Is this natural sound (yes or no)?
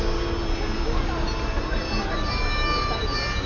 yes